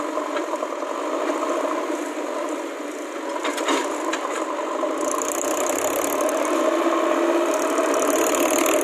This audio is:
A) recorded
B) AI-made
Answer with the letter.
A